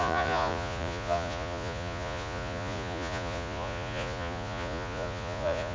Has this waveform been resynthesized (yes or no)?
yes